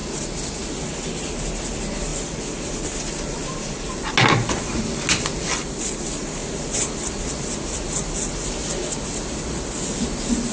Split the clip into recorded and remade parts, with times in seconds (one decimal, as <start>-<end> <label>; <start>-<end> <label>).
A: 0.0-10.5 recorded